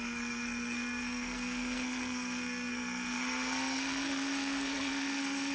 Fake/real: fake